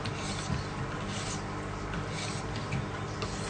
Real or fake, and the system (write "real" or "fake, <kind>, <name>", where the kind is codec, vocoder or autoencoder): real